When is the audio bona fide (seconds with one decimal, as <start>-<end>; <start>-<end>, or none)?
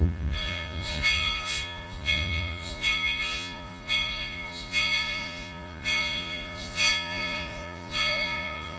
none